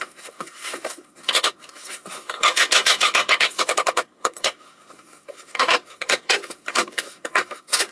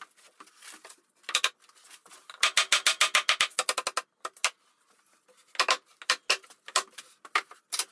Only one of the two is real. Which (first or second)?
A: second